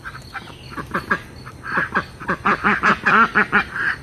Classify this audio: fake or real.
real